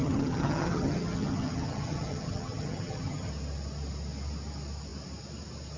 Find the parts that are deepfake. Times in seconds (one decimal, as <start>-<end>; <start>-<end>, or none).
0.0-3.3